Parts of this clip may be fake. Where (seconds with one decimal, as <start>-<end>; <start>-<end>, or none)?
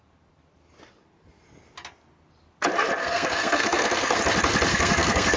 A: 3.0-4.2; 4.7-5.4